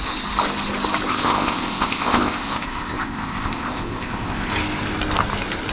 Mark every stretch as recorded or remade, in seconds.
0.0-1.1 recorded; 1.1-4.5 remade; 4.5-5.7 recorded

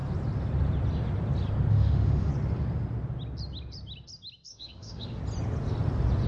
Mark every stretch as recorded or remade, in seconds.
0.0-1.7 recorded; 1.7-2.3 remade; 2.3-4.5 recorded; 4.5-5.2 remade; 5.2-6.3 recorded

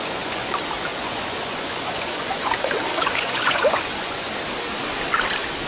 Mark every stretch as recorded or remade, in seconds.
0.0-0.5 remade; 0.5-0.9 recorded; 0.9-4.3 remade; 4.3-5.7 recorded

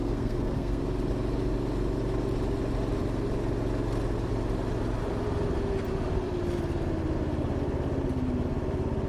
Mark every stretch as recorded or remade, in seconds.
0.0-0.8 remade; 0.8-9.1 recorded